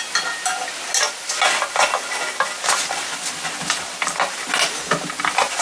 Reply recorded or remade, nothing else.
recorded